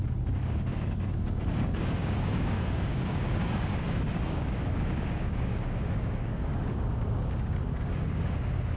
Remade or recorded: remade